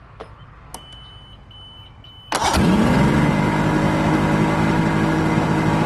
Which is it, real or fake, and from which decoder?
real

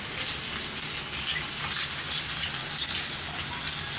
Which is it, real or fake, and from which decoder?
real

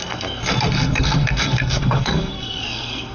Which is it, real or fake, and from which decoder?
fake, codec, SNAC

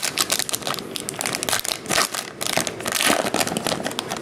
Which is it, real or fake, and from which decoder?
real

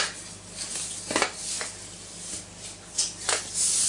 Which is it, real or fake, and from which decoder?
real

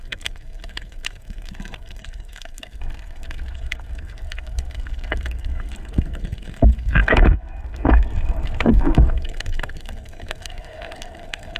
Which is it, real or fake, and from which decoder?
fake, codec, SNAC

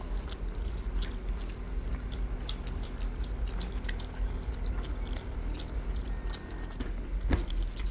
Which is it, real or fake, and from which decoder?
real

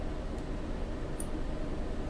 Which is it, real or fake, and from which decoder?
real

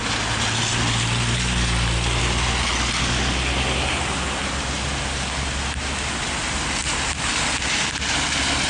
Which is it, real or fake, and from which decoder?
real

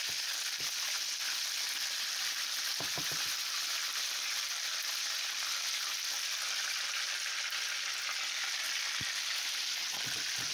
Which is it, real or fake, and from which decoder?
real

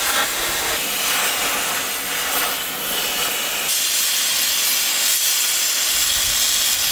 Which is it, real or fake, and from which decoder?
real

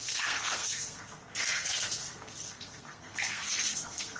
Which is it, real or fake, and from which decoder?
fake, codec, SNAC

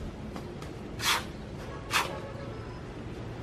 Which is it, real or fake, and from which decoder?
real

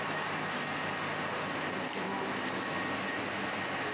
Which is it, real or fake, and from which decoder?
real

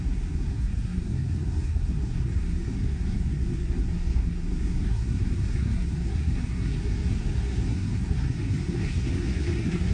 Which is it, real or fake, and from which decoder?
fake, codec, SNAC